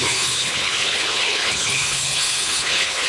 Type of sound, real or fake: fake